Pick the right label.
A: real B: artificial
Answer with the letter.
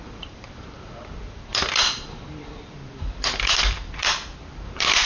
B